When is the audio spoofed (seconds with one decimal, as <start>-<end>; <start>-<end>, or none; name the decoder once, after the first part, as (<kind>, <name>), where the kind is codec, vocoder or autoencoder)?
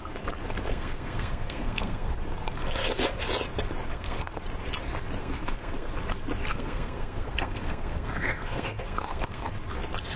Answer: 0.7-2.1 (codec, SNAC); 3.9-4.4; 5.2-5.9; 6.5-9.5